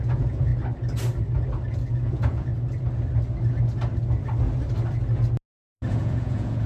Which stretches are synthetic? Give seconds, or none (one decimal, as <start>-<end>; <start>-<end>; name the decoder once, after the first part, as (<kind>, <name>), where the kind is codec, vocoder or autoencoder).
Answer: 0.0-0.5 (vocoder, Vocos); 1.9-2.5; 5.9-6.7